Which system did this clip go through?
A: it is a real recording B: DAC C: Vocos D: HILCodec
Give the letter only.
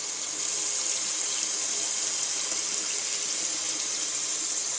A